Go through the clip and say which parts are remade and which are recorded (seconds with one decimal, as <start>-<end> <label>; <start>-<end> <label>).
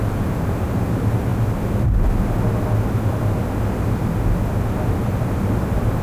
0.0-1.3 remade; 1.3-4.7 recorded; 4.7-6.0 remade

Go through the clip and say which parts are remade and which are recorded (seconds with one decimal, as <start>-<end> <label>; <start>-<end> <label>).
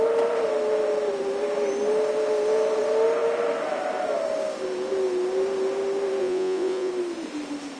0.0-6.2 recorded; 6.2-6.9 remade; 6.9-7.8 recorded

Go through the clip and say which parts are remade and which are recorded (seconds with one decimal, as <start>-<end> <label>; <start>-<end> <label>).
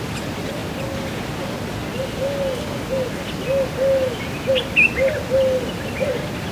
0.0-6.5 recorded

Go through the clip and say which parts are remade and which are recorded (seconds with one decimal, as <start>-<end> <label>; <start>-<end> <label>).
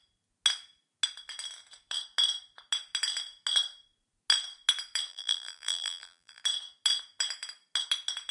0.0-5.1 recorded; 5.1-6.4 remade; 6.4-8.3 recorded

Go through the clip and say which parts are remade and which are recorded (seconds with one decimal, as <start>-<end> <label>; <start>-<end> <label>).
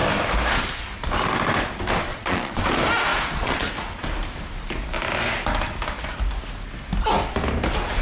0.0-2.1 recorded; 2.1-2.6 remade; 2.6-3.1 recorded; 3.1-3.7 remade; 3.7-8.0 recorded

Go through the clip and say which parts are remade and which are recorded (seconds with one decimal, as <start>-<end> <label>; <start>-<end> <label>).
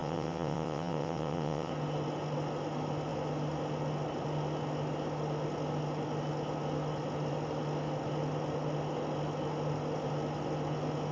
0.0-1.7 remade; 1.7-11.1 recorded